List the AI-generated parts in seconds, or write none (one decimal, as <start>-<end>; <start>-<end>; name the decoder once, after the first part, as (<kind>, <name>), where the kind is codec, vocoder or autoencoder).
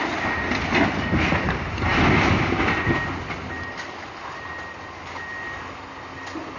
none